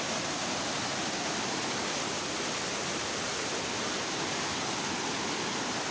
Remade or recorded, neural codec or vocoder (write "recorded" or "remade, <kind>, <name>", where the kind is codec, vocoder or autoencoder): recorded